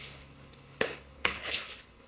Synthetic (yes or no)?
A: yes